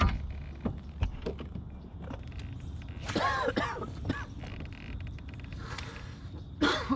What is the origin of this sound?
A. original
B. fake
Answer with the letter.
A